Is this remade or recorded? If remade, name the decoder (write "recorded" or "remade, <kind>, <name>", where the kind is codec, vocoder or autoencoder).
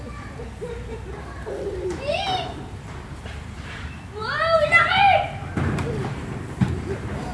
remade, vocoder, BigVGAN v2